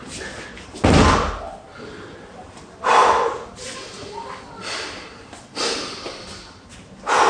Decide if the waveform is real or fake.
real